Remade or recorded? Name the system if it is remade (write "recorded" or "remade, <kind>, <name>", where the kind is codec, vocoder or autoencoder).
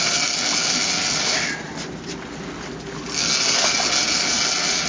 recorded